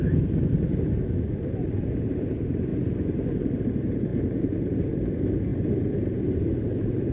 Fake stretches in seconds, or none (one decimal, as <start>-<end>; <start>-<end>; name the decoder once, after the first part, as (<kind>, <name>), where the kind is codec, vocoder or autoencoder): 0.0-2.7 (vocoder, BigVGAN v2); 3.6-7.1